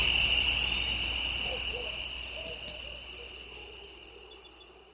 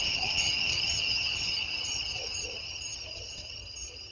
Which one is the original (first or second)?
first